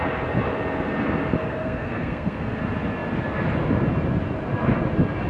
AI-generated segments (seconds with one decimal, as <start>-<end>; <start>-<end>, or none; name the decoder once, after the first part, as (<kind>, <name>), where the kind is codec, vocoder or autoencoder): 1.4-2.6 (codec, SNAC)